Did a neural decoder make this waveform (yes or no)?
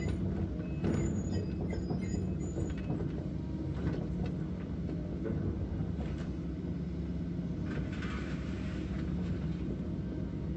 no